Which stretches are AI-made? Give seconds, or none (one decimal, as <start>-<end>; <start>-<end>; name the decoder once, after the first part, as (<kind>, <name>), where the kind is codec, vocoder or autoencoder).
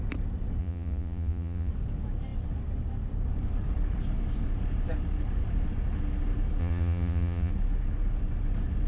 0.6-1.7 (vocoder, Vocos); 6.6-7.5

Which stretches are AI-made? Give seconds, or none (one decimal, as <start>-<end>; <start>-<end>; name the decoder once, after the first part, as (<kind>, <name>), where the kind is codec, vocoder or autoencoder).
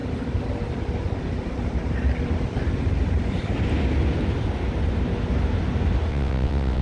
6.1-6.8 (vocoder, WaveNeXt)